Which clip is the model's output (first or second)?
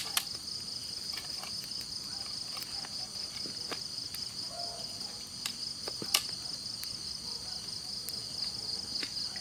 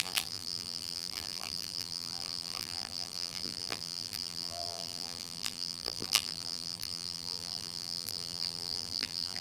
second